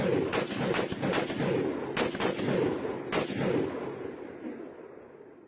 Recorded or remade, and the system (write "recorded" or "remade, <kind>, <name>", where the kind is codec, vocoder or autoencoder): recorded